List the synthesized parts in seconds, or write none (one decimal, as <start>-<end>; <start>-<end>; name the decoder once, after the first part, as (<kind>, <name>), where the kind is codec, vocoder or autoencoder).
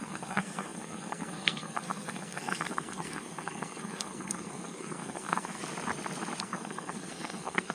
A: 0.0-5.6 (codec, SNAC); 6.4-7.7